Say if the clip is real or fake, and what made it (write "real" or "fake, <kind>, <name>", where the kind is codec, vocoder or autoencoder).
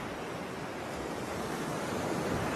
real